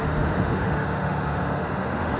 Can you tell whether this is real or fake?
fake